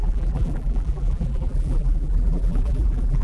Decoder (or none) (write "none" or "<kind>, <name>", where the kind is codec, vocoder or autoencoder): vocoder, BigVGAN v2